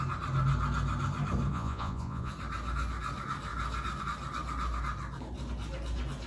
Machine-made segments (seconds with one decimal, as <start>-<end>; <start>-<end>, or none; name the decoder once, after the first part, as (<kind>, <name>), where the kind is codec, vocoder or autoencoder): 1.5-2.3 (vocoder, Vocos)